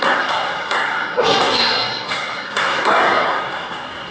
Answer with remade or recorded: remade